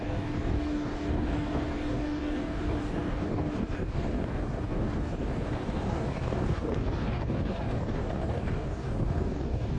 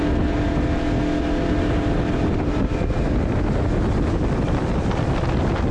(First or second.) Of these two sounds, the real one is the second